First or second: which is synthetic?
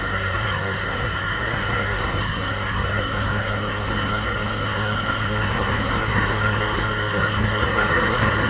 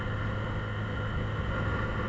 first